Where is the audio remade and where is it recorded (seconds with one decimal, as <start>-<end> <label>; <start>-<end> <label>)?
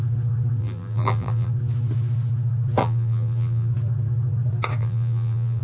0.0-0.6 recorded; 0.6-1.5 remade; 1.5-2.8 recorded; 2.8-3.7 remade; 3.7-4.8 recorded; 4.8-5.6 remade